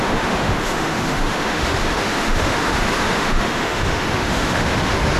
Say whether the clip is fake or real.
fake